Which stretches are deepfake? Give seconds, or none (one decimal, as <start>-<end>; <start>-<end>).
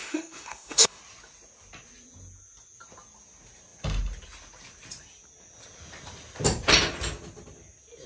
0.0-1.0